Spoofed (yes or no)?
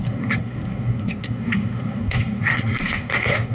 yes